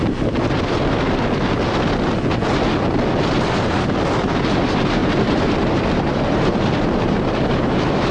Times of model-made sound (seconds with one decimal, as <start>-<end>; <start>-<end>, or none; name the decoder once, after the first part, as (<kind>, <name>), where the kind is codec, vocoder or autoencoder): 0.0-0.4 (vocoder, BigVGAN v2); 4.2-8.1